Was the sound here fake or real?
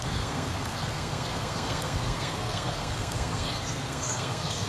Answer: fake